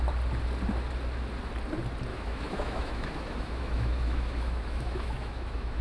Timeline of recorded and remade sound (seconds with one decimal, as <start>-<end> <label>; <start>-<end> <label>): 0.0-2.1 recorded; 2.1-5.8 remade